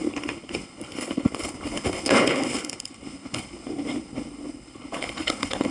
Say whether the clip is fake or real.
fake